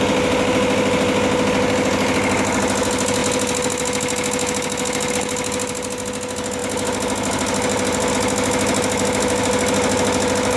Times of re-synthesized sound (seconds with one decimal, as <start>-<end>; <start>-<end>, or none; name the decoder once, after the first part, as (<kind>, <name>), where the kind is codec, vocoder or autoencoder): none